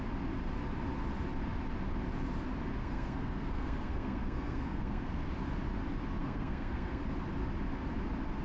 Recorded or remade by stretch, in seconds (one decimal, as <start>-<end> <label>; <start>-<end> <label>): 0.0-2.8 recorded; 2.8-5.3 remade; 5.3-6.2 recorded; 6.2-7.0 remade; 7.0-8.4 recorded